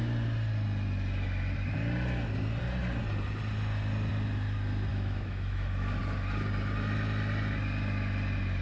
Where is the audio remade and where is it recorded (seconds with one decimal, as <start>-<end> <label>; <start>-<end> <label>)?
0.0-4.9 recorded; 4.9-6.0 remade; 6.0-8.6 recorded